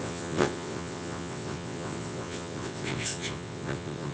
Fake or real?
fake